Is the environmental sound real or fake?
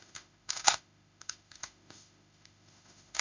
fake